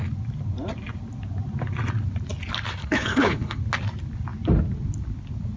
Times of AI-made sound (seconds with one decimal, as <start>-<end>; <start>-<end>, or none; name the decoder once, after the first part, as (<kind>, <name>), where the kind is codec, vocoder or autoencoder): 2.8-3.6 (codec, HILCodec)

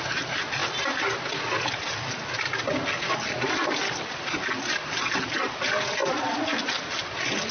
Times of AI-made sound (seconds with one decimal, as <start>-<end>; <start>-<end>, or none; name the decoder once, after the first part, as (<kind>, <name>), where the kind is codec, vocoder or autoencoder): none

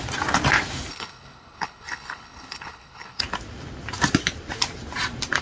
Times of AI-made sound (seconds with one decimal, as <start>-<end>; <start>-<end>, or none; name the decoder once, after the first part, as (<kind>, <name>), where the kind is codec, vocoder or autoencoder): 0.9-3.2 (codec, HILCodec)

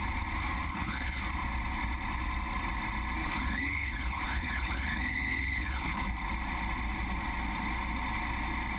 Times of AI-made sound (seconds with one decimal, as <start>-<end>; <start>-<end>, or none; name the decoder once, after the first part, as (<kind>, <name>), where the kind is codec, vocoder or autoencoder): 0.7-1.2 (codec, HILCodec); 3.2-6.1

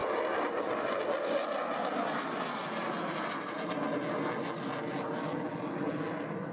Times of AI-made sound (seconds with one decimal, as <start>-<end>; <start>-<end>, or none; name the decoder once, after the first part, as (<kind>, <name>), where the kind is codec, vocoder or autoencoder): none

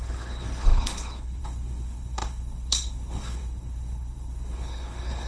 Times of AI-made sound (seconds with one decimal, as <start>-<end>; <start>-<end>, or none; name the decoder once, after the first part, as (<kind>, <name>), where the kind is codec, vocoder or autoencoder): 0.0-5.3 (codec, HILCodec)

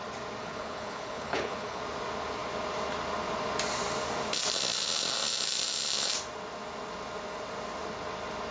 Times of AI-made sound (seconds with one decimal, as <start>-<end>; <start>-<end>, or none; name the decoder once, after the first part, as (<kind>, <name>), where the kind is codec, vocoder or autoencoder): 0.4-1.8 (codec, HILCodec)

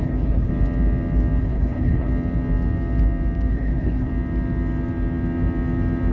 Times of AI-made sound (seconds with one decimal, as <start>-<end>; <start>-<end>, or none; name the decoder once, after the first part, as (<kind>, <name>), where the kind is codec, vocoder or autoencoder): 0.0-0.5 (codec, HILCodec); 1.4-2.1; 3.5-4.1